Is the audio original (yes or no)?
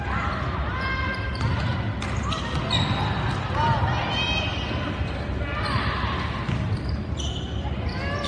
yes